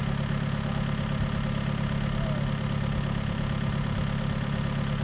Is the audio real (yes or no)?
yes